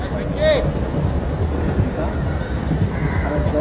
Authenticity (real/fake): real